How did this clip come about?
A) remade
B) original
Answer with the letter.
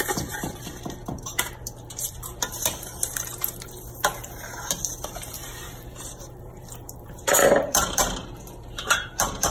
A